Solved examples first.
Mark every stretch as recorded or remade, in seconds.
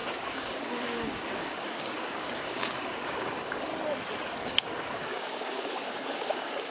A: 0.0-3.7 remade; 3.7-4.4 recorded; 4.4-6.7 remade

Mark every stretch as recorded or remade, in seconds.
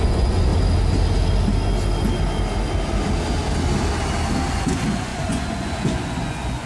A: 0.0-0.5 remade; 0.5-4.5 recorded; 4.5-6.7 remade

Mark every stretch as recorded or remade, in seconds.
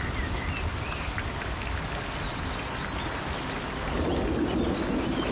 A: 0.0-5.3 recorded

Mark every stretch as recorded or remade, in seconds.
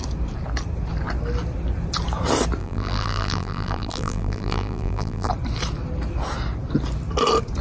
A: 0.0-2.6 recorded; 2.6-5.3 remade; 5.3-7.6 recorded